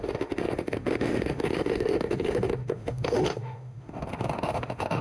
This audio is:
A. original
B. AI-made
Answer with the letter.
B